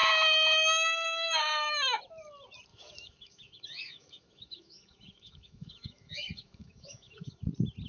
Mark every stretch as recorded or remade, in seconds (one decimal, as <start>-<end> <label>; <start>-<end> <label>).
0.0-2.0 remade; 2.0-2.7 recorded; 2.7-7.4 remade; 7.4-7.9 recorded

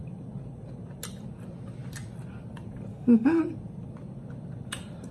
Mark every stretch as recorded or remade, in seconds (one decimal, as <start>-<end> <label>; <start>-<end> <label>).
0.0-2.9 recorded; 2.9-3.4 remade; 3.4-5.1 recorded

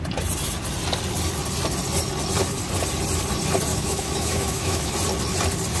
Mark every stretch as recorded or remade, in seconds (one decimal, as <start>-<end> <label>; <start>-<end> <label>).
0.0-3.7 recorded; 3.7-4.9 remade; 4.9-5.8 recorded

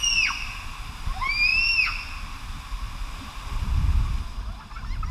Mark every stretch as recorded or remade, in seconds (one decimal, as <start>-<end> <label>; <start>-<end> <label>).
0.0-5.1 recorded

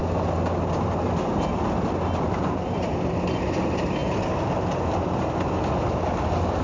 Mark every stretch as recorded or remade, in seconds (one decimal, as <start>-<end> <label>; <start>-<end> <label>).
0.0-6.6 recorded

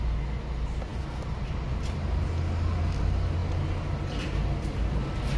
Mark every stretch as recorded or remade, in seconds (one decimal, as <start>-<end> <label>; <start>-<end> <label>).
0.0-5.4 recorded